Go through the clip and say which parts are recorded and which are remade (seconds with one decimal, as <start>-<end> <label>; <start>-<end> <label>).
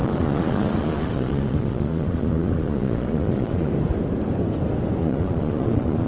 0.0-3.7 remade; 3.7-5.0 recorded; 5.0-6.1 remade